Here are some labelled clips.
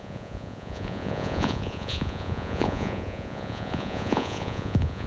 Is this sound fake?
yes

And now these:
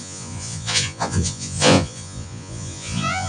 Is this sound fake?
yes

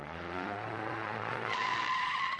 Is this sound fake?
yes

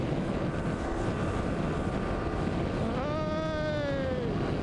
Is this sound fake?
no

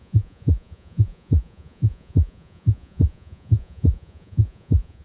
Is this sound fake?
yes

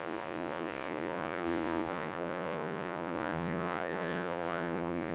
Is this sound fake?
yes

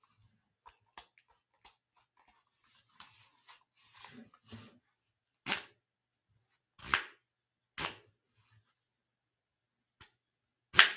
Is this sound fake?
no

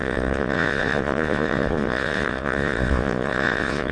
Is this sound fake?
yes